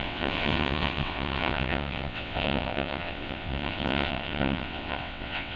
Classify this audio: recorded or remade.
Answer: remade